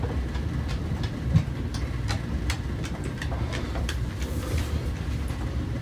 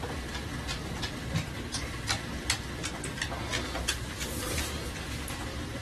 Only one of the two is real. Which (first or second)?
second